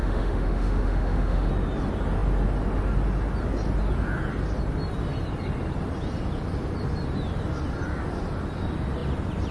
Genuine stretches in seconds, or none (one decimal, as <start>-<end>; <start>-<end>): 1.5-9.5